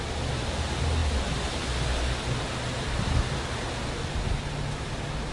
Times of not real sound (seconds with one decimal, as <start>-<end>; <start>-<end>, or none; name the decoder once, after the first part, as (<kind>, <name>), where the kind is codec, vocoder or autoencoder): none